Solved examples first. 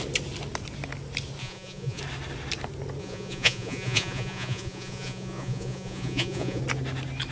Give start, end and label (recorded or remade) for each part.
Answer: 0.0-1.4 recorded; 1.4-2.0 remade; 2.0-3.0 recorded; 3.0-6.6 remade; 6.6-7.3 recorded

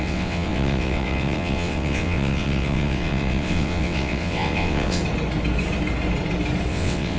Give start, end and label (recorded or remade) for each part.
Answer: 0.0-5.0 remade; 5.0-6.7 recorded; 6.7-7.2 remade

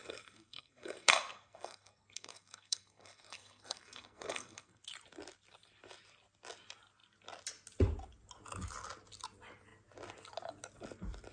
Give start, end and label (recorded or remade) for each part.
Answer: 0.0-4.8 remade; 4.8-11.3 recorded

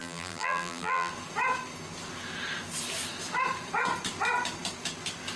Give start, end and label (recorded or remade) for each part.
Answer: 0.0-1.1 remade; 1.1-5.4 recorded

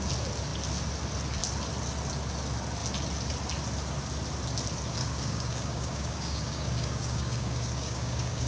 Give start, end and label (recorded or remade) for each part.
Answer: 0.0-5.0 recorded; 5.0-8.5 remade

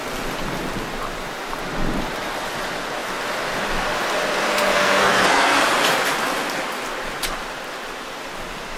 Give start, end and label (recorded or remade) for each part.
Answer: 0.0-4.5 recorded; 4.5-5.6 remade; 5.6-8.8 recorded